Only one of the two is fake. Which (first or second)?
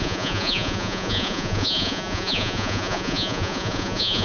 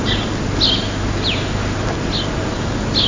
first